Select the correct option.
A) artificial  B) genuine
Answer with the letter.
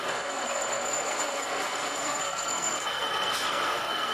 A